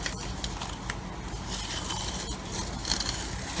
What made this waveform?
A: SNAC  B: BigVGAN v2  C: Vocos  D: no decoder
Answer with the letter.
D